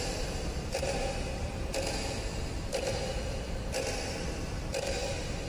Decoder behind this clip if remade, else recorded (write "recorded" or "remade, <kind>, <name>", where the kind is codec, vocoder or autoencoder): remade, vocoder, BigVGAN v2